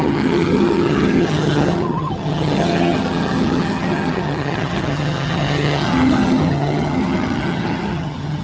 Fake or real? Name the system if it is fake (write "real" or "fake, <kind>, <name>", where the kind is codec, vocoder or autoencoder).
fake, vocoder, HiFi-GAN